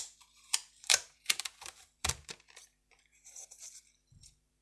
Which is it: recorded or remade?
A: remade